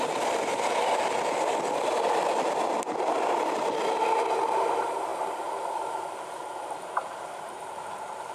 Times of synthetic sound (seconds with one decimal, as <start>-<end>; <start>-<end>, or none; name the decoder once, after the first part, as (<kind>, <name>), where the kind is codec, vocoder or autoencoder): 0.0-5.1 (vocoder, BigVGAN v2)